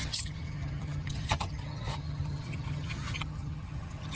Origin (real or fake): fake